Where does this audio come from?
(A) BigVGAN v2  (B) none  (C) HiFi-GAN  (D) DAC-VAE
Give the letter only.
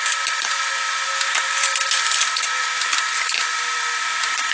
B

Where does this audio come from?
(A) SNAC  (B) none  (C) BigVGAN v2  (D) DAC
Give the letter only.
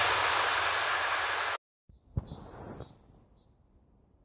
B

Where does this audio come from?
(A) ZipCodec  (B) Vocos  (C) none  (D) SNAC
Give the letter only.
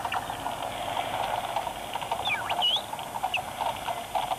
C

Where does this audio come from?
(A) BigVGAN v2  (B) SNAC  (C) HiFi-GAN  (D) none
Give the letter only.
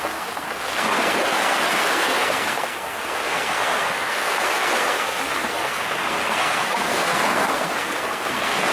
B